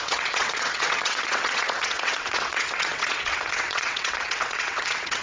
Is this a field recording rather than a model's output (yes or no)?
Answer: no